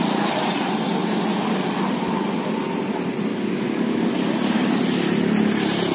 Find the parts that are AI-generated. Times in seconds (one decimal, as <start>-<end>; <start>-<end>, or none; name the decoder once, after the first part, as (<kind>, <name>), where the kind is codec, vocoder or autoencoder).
3.3-4.1 (codec, DAC)